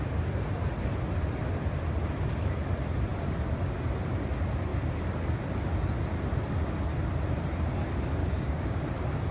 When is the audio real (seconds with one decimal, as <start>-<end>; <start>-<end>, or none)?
0.0-8.2; 8.8-9.3